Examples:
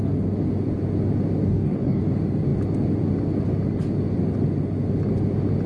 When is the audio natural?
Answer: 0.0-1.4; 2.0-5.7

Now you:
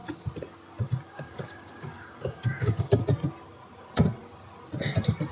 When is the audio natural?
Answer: 0.0-1.1; 3.0-5.3

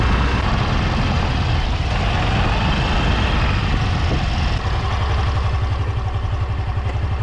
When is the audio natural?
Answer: 0.0-7.2

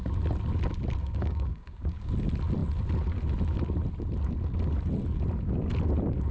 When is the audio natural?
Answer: 0.0-1.0; 2.1-6.3

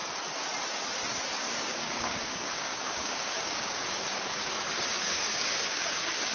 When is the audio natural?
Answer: 0.0-1.4

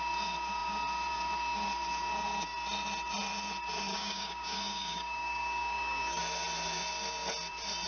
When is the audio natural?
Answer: 0.0-3.9; 6.2-7.9